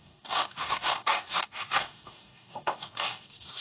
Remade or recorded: remade